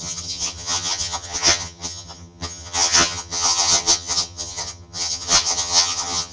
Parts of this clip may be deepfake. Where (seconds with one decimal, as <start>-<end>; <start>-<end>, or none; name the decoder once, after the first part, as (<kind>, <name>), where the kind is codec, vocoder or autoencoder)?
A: 0.0-6.3 (vocoder, HiFi-GAN)